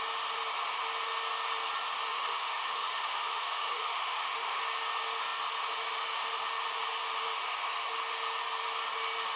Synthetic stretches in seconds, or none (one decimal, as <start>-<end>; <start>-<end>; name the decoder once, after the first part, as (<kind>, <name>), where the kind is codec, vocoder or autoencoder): 2.1-4.6 (autoencoder, DAC-VAE)